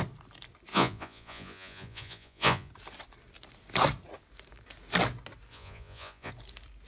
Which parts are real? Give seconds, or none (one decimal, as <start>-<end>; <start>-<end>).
0.0-0.7; 2.7-5.5; 6.3-6.9